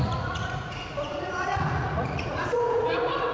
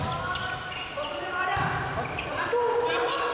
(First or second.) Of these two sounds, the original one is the second